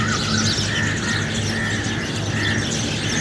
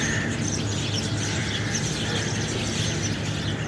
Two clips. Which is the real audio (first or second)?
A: first